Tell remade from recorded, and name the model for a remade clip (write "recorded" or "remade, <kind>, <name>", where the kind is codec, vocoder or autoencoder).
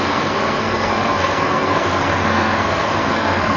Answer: remade, codec, SNAC